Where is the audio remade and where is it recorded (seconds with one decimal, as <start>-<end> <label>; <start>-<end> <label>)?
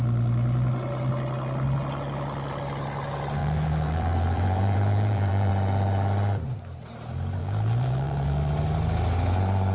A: 0.0-3.4 recorded; 3.4-5.5 remade; 5.5-7.4 recorded; 7.4-8.5 remade; 8.5-9.7 recorded